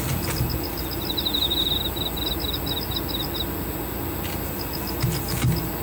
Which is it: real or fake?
real